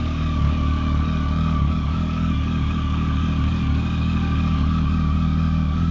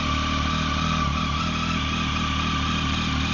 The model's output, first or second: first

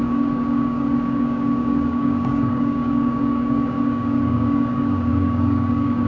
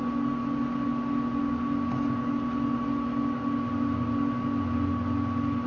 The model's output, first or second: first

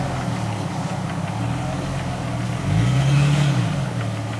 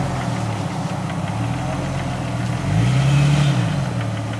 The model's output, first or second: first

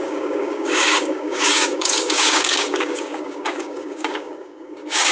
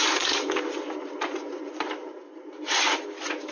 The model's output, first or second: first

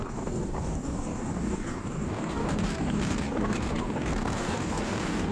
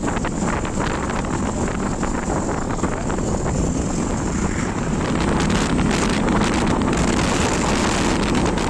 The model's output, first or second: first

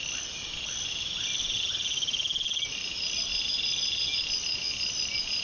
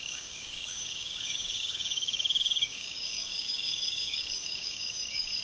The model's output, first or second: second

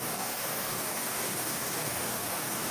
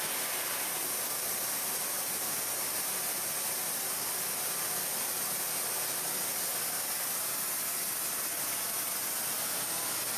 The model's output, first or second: first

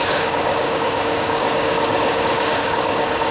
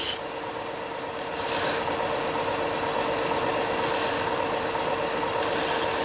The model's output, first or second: first